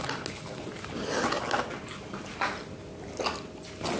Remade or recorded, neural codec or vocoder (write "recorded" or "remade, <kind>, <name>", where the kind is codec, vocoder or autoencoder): recorded